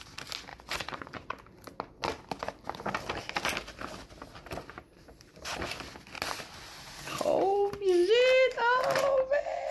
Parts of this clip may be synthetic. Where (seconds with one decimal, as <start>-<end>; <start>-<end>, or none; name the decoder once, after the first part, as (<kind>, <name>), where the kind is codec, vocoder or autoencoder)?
0.5-1.4 (vocoder, Vocos)